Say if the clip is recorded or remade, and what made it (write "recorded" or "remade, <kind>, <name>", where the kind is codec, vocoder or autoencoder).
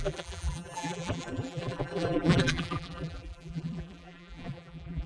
remade, vocoder, BigVGAN v2